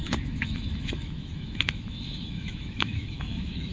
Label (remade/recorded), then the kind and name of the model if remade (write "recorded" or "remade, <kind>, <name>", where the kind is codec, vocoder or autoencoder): remade, autoencoder, DAC-VAE